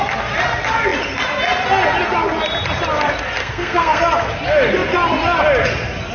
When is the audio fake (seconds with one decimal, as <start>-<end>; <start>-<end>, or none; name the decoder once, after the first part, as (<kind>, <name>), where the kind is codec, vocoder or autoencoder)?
3.4-4.0 (codec, SNAC)

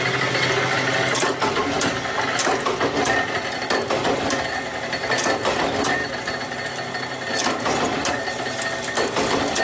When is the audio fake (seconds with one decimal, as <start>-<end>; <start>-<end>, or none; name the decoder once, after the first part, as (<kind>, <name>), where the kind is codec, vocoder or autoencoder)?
none

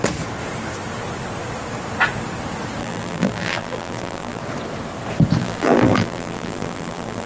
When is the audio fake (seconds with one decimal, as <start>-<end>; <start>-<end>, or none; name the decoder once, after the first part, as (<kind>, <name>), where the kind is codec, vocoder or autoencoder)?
2.8-4.4 (vocoder, BigVGAN v2); 5.4-7.3

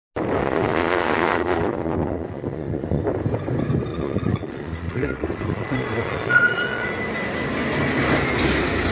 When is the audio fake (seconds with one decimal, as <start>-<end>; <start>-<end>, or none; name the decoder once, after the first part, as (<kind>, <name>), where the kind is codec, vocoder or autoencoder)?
0.4-3.0 (vocoder, Vocos); 3.9-6.9

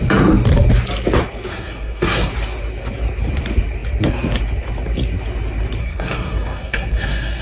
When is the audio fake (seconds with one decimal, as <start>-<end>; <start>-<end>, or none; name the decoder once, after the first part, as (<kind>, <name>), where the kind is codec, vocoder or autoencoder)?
1.5-2.3 (codec, SNAC); 5.8-7.4

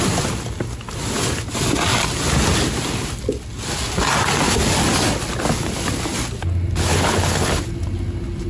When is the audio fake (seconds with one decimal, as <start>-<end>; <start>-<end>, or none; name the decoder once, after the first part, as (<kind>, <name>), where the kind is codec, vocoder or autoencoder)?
6.9-7.6 (codec, HILCodec)

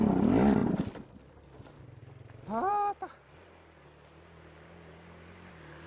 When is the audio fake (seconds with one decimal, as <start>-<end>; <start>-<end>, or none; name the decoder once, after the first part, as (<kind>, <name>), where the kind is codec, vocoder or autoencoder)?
0.6-1.3 (vocoder, BigVGAN v2)

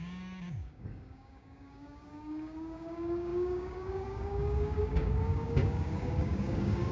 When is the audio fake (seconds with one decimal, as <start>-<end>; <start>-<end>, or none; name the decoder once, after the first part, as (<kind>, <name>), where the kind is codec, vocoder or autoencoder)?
0.0-6.9 (codec, DAC)